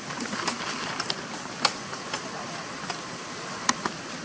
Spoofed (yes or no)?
no